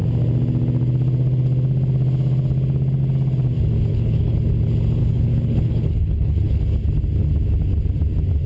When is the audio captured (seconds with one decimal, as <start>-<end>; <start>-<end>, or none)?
0.0-3.9; 4.4-5.0; 6.6-8.5